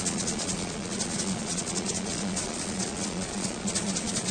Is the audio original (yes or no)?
no